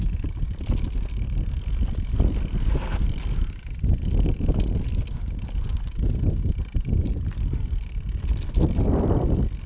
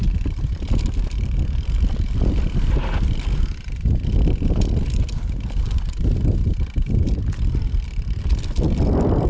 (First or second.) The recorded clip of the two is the first